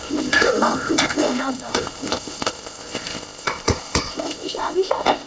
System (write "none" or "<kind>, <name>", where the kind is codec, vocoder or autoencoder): codec, ZipCodec